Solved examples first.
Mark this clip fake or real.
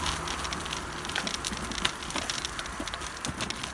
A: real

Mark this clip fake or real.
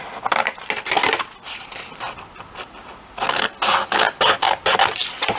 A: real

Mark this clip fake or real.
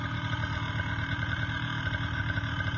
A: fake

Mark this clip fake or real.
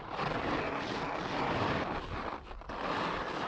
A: real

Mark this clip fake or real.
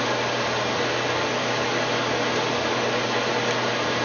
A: real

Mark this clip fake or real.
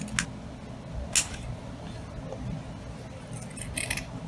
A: real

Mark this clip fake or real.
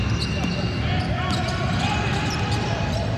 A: real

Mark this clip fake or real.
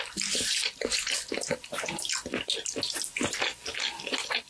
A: real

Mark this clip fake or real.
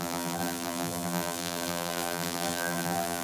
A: fake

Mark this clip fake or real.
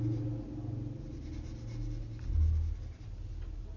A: real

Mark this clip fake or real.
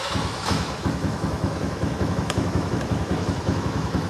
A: fake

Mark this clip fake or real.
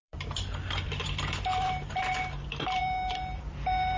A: fake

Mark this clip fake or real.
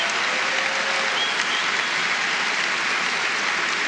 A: real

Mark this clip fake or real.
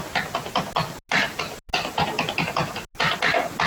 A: real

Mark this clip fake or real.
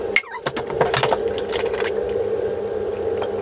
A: real